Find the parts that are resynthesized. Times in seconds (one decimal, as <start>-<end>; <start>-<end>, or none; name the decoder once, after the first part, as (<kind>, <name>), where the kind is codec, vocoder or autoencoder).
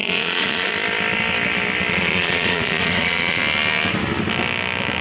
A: 0.0-0.7 (vocoder, Vocos); 1.9-3.4